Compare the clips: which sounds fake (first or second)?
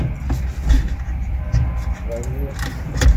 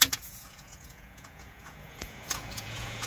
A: second